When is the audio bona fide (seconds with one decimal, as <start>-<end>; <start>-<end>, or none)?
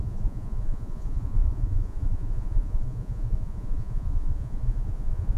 none